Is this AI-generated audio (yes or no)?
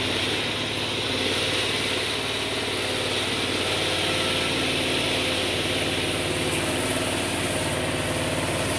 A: no